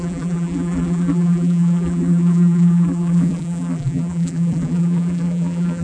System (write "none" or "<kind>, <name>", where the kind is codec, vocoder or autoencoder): vocoder, BigVGAN v2